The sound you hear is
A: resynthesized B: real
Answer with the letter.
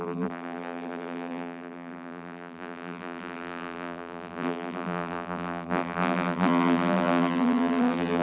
A